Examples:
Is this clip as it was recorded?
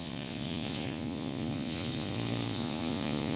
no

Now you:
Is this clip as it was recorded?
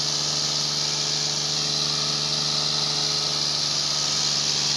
yes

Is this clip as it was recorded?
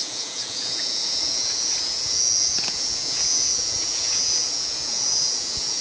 no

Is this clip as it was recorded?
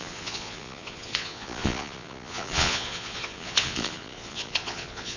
no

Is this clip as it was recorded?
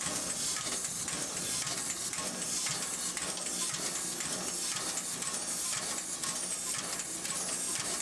yes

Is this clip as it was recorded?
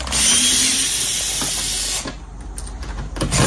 yes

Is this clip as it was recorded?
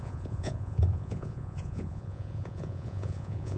no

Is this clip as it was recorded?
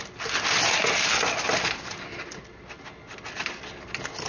yes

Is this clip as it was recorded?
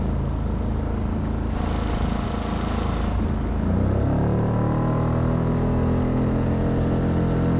yes